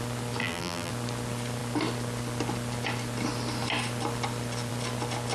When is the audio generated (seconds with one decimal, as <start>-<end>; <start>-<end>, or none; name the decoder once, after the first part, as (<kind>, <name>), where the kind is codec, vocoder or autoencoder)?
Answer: 0.4-0.9 (vocoder, BigVGAN v2)